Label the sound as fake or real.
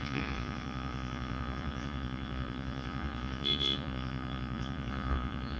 fake